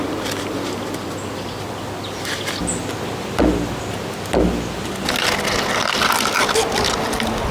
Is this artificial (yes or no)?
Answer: no